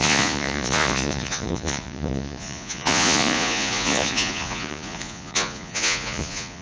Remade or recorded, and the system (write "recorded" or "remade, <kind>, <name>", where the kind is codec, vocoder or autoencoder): remade, vocoder, Vocos